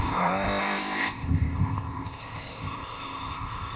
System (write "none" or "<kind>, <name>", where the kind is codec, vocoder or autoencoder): codec, ZipCodec